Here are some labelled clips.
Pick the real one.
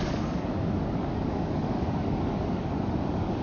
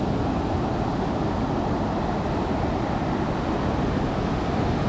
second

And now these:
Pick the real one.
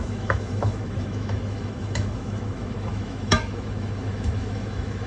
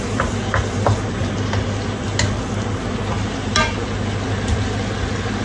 second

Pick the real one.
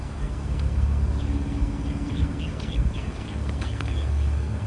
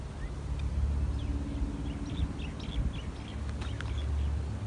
second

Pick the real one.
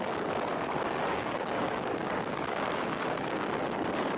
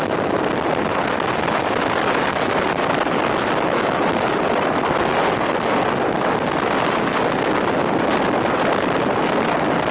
second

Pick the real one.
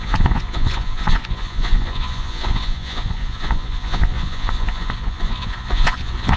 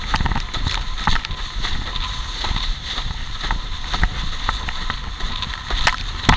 second